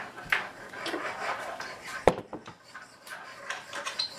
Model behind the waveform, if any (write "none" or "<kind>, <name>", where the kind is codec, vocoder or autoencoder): vocoder, BigVGAN v2